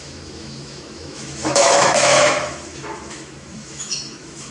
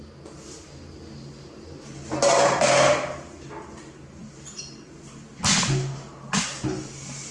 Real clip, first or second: second